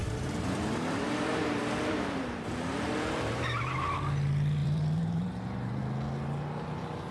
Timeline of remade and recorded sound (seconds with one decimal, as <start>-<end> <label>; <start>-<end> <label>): 0.0-3.6 remade; 3.6-4.6 recorded; 4.6-5.8 remade; 5.8-7.1 recorded